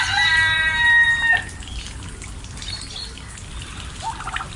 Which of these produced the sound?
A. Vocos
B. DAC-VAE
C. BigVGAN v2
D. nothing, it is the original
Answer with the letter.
C